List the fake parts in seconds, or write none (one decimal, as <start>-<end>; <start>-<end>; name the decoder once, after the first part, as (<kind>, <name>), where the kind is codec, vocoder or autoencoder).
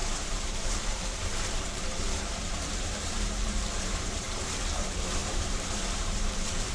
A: 0.0-6.7 (vocoder, BigVGAN v2)